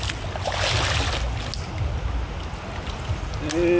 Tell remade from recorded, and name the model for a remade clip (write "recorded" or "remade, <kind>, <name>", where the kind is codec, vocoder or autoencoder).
recorded